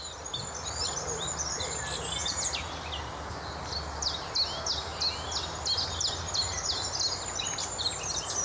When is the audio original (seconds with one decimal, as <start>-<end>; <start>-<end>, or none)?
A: 0.0-8.4